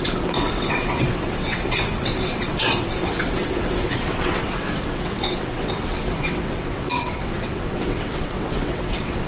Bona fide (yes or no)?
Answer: no